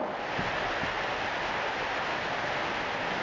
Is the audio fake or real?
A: real